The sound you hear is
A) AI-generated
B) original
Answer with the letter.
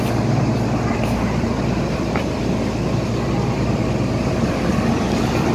B